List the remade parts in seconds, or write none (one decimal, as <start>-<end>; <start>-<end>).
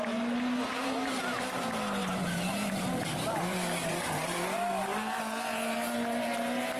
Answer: 0.7-1.4; 2.0-5.2